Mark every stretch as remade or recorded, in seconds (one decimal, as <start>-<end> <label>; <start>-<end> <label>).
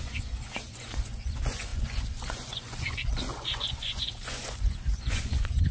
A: 0.0-5.7 remade